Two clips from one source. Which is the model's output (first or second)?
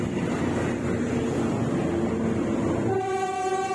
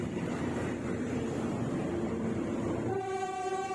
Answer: second